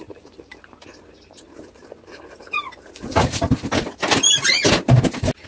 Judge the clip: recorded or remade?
recorded